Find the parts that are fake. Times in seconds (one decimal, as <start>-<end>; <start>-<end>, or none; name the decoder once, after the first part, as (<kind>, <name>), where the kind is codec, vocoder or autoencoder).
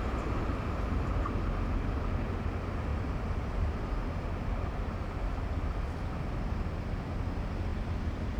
2.9-3.9 (vocoder, BigVGAN v2); 7.7-8.4